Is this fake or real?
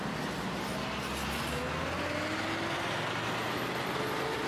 real